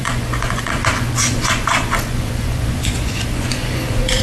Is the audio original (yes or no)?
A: no